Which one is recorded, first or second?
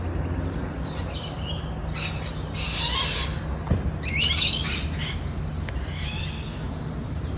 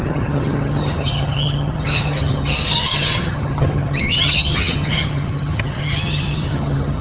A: first